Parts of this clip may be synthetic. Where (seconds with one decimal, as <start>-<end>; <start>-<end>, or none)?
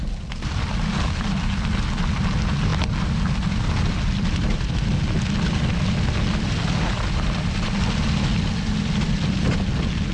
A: none